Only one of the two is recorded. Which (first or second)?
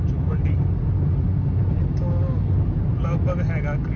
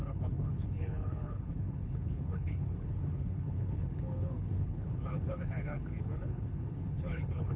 first